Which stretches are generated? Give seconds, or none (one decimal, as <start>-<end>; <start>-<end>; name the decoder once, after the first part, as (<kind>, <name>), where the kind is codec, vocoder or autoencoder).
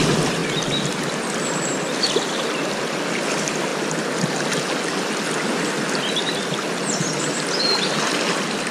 none